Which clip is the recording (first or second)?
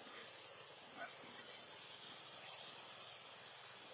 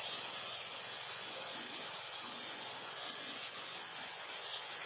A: first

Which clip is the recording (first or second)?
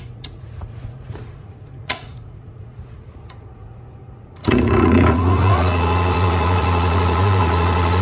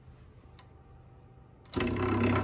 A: second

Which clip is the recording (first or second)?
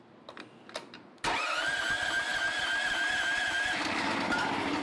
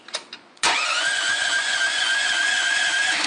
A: first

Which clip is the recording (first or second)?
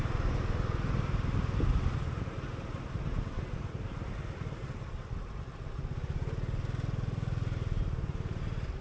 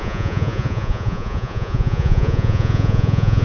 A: first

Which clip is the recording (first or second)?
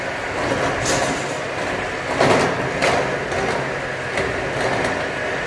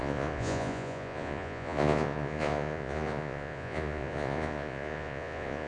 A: first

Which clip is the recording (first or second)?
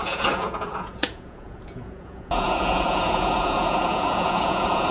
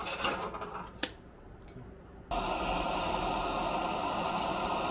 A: second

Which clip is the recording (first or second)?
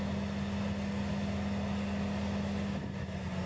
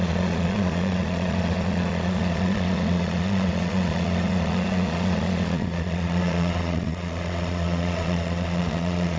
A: first